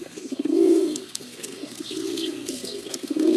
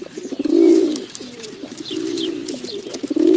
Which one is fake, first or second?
first